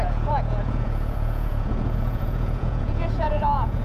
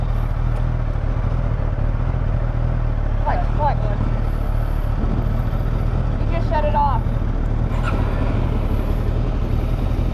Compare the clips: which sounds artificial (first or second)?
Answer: first